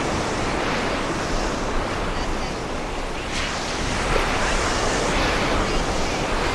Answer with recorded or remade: recorded